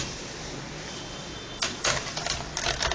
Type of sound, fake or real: real